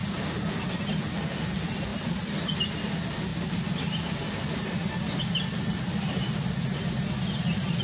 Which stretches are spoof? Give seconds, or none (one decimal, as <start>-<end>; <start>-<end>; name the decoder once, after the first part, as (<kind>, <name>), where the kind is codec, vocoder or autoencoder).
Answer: none